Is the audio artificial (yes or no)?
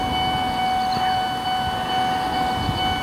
no